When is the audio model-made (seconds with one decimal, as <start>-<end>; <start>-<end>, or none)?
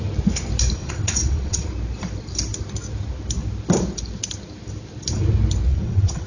0.8-1.7; 5.7-6.3